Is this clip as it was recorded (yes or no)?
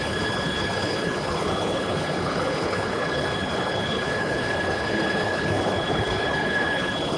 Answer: no